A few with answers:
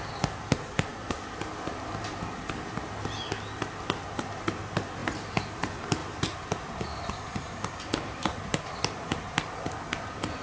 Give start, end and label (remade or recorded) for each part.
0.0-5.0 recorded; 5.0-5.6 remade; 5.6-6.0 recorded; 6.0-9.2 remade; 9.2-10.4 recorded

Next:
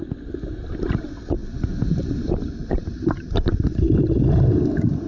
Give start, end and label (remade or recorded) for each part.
0.0-1.4 recorded; 1.4-2.2 remade; 2.2-2.6 recorded; 2.6-5.1 remade

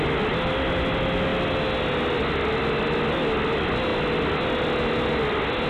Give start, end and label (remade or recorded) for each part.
0.0-5.7 recorded

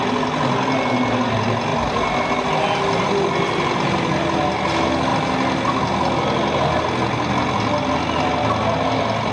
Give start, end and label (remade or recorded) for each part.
0.0-9.3 recorded